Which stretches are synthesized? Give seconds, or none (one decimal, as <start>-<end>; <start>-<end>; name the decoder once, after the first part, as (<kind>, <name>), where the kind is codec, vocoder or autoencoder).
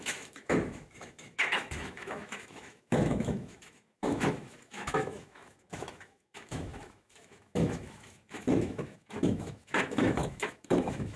0.0-11.2 (autoencoder, DAC-VAE)